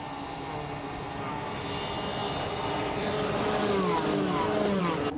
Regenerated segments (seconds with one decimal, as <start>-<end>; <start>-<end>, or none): none